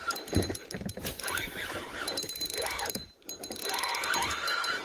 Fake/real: fake